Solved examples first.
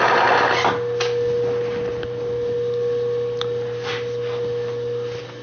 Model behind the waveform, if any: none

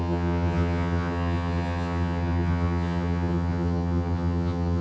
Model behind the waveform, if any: vocoder, HiFi-GAN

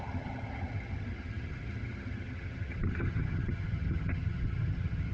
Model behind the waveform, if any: vocoder, HiFi-GAN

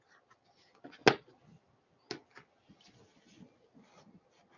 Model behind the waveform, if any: none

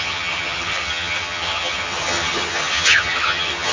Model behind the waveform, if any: vocoder, HiFi-GAN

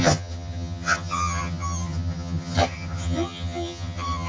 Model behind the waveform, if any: vocoder, HiFi-GAN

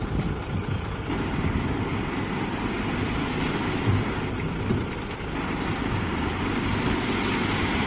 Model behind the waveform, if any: none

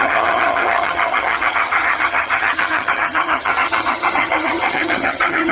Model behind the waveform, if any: vocoder, HiFi-GAN